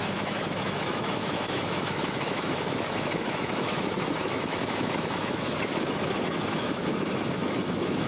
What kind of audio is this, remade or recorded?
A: remade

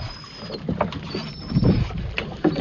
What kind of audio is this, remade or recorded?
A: recorded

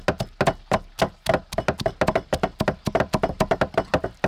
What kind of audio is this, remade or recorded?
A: recorded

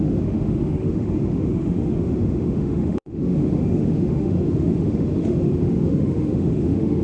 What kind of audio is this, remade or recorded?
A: remade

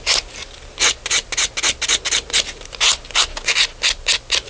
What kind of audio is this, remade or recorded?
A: recorded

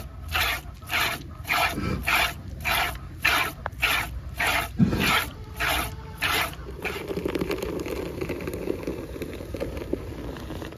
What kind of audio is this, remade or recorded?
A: recorded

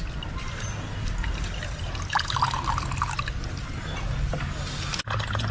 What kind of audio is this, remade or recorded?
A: recorded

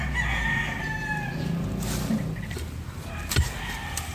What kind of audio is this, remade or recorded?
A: recorded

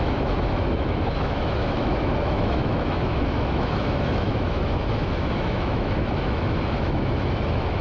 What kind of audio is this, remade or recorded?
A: remade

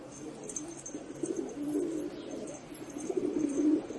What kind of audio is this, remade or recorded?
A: recorded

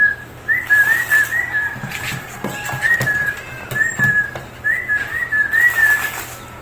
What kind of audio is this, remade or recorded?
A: recorded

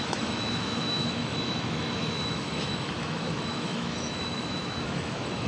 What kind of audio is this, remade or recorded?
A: remade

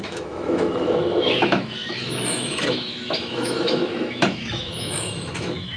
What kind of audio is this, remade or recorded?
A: remade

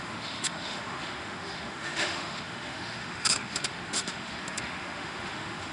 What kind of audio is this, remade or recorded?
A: remade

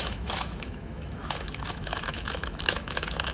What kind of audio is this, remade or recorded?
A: remade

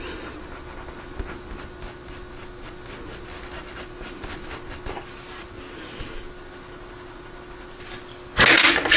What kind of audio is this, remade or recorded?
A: recorded